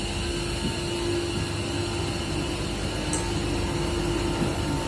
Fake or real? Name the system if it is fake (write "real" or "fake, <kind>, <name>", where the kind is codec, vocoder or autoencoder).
real